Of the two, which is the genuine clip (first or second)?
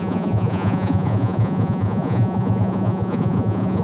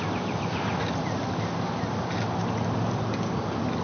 second